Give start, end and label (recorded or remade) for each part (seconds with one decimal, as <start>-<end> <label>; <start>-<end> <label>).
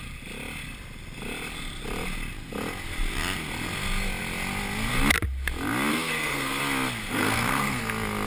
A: 0.0-5.9 recorded; 5.9-6.6 remade; 6.6-7.0 recorded; 7.0-7.8 remade; 7.8-8.3 recorded